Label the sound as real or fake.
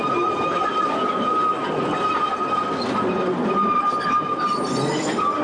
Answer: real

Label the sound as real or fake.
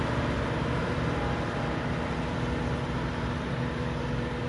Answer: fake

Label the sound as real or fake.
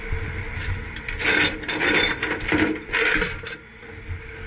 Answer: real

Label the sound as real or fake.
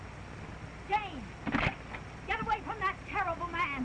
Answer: real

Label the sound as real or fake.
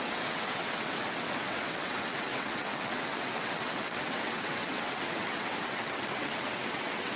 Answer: fake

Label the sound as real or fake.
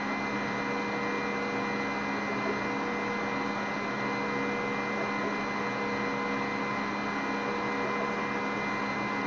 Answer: real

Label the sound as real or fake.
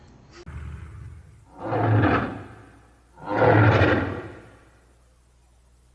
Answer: real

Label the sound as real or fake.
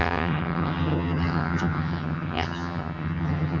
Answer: fake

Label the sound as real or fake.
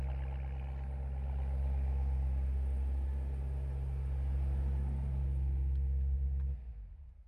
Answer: real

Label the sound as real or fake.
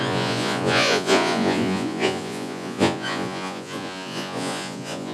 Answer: fake